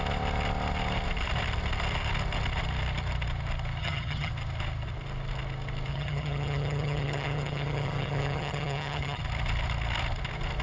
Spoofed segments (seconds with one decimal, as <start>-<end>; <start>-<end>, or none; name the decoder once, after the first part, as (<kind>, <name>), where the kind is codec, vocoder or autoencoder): 3.8-4.3 (vocoder, HiFi-GAN); 5.9-9.2